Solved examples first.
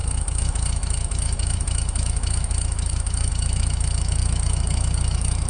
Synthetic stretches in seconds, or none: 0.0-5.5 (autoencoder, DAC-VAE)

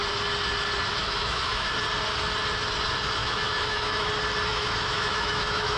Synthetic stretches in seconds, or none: 1.0-1.7 (autoencoder, DAC-VAE); 3.2-4.1; 4.5-5.8